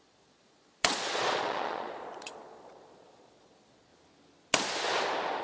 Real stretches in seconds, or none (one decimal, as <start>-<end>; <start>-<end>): 3.9-5.4